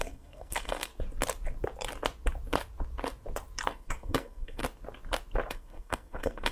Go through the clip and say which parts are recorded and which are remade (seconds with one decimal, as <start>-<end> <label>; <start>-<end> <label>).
0.0-0.9 remade; 0.9-3.7 recorded; 3.7-4.6 remade; 4.6-5.5 recorded; 5.5-6.5 remade